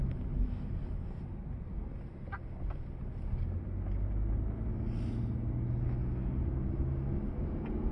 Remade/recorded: recorded